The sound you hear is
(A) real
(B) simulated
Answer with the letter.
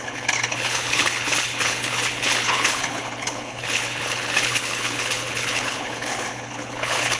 B